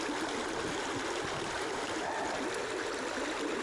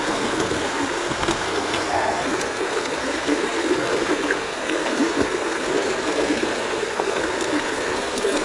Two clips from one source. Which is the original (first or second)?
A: first